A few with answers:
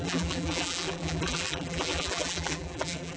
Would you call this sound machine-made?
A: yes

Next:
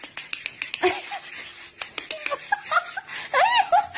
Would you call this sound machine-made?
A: no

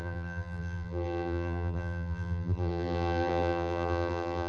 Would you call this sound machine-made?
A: yes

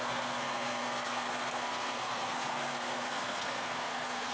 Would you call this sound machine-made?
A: yes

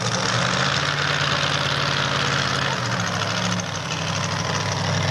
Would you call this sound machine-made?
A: no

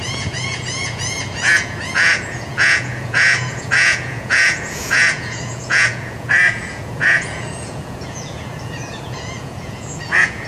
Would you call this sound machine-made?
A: yes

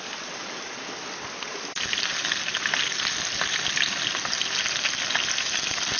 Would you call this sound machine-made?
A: no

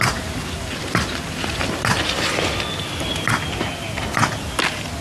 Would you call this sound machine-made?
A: no